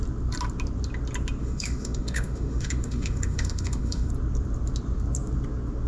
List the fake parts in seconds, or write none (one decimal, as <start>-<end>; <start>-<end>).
1.4-4.1